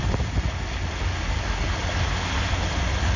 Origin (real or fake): real